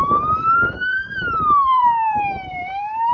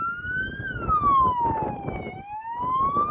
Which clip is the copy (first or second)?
first